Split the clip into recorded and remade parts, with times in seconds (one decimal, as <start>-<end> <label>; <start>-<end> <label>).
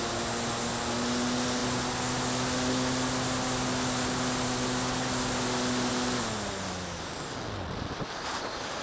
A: 0.0-8.8 recorded